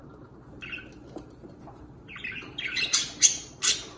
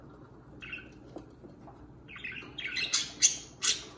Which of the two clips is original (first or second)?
second